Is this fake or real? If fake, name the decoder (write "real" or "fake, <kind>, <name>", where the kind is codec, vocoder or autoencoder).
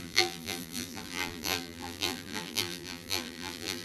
fake, vocoder, BigVGAN v2